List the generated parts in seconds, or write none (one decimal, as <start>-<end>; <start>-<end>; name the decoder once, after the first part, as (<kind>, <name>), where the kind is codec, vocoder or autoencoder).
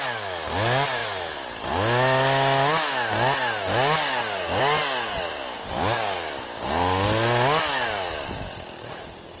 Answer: none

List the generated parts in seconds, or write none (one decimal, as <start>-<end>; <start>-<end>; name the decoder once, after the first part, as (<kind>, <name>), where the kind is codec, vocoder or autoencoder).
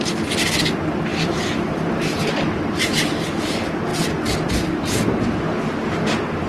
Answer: 1.1-3.5 (vocoder, BigVGAN v2); 3.9-5.7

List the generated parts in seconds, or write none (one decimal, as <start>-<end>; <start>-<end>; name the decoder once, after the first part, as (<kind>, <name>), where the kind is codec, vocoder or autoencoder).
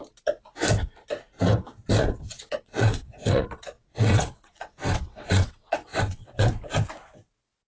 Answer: 2.0-6.5 (vocoder, WaveNeXt)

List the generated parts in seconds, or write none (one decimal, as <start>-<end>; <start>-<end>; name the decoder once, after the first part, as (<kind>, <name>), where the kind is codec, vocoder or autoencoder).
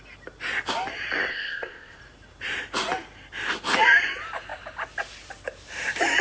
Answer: 1.3-2.0 (codec, ZipCodec)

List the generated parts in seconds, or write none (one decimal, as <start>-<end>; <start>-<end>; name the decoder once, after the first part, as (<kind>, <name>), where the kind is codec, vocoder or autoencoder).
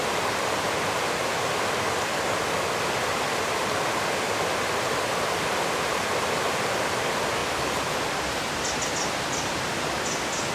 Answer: none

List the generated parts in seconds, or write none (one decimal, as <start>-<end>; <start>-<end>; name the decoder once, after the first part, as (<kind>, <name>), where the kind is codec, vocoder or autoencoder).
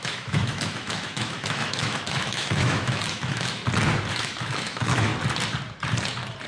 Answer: 0.0-3.6 (autoencoder, DAC-VAE); 4.1-5.1